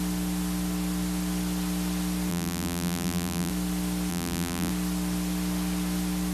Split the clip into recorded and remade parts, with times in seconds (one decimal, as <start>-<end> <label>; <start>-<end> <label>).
0.0-2.3 recorded; 2.3-3.5 remade; 3.5-4.1 recorded; 4.1-4.7 remade; 4.7-6.3 recorded